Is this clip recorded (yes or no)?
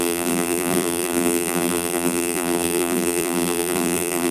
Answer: no